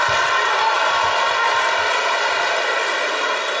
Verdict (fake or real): real